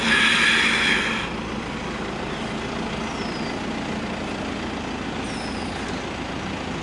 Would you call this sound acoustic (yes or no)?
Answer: yes